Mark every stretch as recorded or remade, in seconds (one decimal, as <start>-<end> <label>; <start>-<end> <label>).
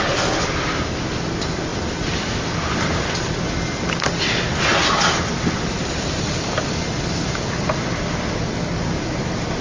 0.0-1.7 recorded; 1.7-4.0 remade; 4.0-4.7 recorded; 4.7-6.7 remade; 6.7-9.6 recorded